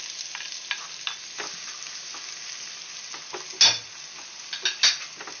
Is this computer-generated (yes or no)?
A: no